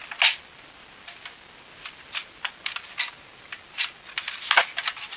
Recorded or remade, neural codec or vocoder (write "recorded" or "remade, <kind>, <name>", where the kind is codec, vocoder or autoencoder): recorded